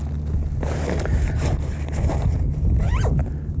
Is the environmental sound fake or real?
real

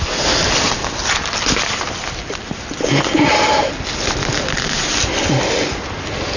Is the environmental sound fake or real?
real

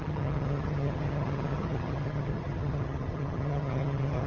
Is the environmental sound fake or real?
fake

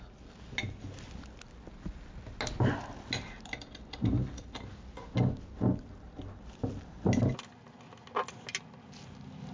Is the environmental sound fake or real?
real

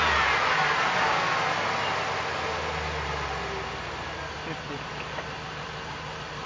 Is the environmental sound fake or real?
real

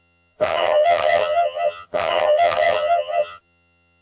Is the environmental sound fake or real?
fake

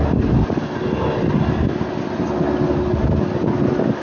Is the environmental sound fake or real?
real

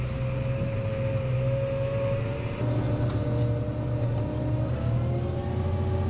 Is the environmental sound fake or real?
real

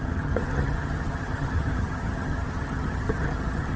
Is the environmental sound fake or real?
fake